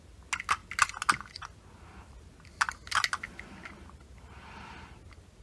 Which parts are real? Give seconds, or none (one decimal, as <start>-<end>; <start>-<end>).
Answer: 0.0-5.4